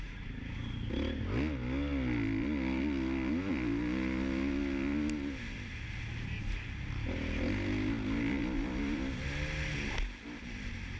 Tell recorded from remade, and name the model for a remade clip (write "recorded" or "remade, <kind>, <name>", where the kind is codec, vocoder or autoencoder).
recorded